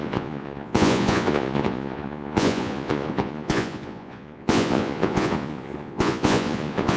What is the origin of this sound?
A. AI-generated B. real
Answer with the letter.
A